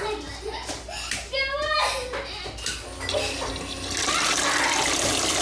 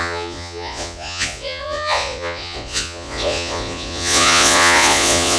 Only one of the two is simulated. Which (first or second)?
second